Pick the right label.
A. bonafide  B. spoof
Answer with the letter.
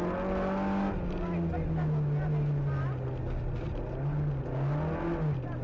A